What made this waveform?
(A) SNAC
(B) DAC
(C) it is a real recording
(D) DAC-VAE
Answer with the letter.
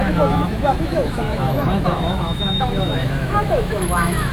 D